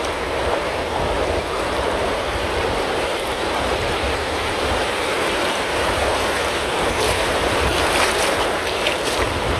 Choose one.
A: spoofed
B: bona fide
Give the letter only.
A